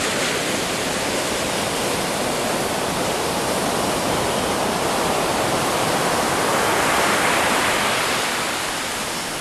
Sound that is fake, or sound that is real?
real